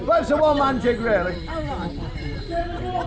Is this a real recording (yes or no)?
yes